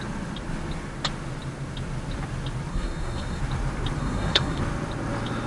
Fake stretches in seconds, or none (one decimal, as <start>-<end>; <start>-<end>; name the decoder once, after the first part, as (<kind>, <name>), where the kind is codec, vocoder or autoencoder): 2.7-3.4 (codec, SNAC); 4.0-4.6